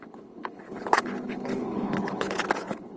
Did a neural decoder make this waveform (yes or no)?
yes